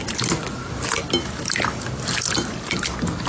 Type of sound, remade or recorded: recorded